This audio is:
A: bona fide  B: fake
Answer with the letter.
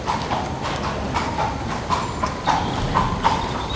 A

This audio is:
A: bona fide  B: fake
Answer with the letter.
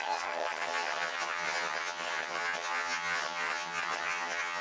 B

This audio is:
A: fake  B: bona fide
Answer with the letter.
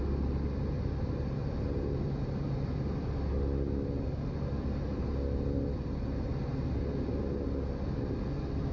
B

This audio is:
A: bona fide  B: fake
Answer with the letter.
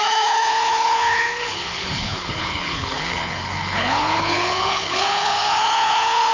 B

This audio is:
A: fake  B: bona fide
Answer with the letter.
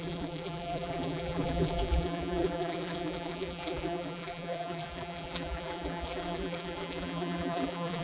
A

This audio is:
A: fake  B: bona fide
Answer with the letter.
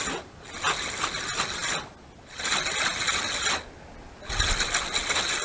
B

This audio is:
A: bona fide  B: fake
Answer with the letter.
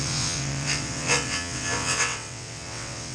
B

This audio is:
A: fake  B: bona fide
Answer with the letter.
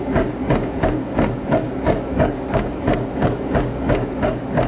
A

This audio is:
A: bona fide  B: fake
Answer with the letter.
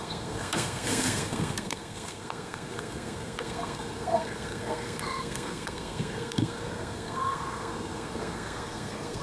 B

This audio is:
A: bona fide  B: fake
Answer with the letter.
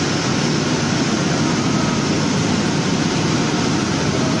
A